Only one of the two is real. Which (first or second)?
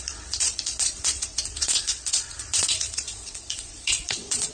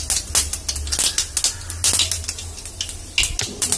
second